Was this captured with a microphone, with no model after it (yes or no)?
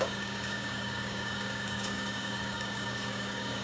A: no